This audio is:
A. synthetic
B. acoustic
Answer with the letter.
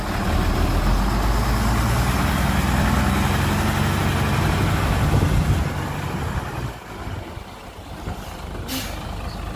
B